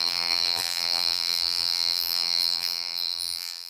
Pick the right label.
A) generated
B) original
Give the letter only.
A